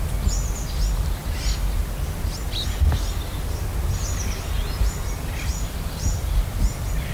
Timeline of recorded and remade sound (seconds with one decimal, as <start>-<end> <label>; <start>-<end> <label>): 0.0-7.1 recorded